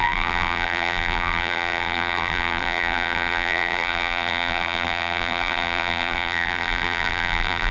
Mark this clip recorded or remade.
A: remade